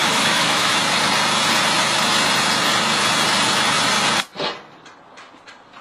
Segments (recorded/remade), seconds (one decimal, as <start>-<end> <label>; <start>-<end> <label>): 0.0-0.7 remade; 0.7-5.8 recorded